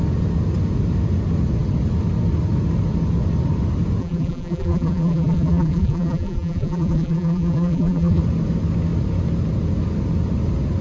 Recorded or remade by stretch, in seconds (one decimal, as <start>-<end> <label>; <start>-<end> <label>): 0.0-4.0 recorded; 4.0-8.2 remade; 8.2-10.8 recorded